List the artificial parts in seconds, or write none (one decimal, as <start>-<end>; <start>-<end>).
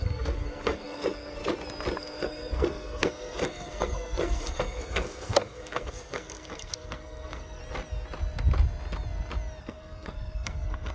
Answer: 0.0-1.4; 2.0-7.6; 9.6-10.9